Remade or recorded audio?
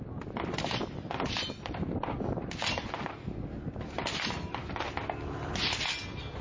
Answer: recorded